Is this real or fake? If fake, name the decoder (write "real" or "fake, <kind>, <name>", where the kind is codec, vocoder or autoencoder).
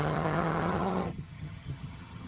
fake, vocoder, HiFi-GAN